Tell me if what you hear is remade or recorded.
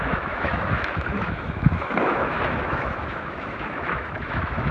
remade